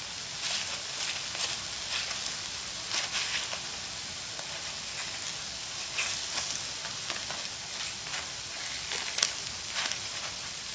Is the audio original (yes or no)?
yes